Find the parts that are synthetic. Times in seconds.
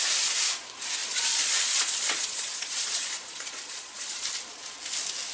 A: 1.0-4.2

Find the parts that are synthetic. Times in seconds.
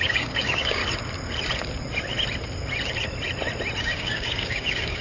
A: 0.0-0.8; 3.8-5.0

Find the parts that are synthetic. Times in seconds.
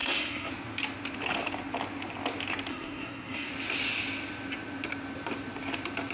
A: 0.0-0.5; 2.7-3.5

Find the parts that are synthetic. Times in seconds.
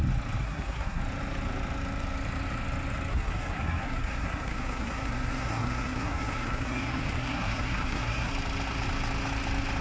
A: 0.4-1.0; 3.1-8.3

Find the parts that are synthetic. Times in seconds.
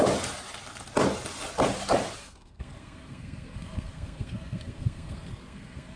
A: 2.2-6.0